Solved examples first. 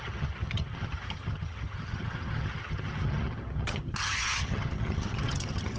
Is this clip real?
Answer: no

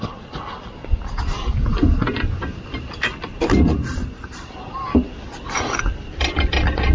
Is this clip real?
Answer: yes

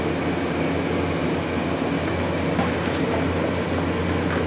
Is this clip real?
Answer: yes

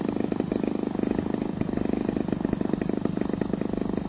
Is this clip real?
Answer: yes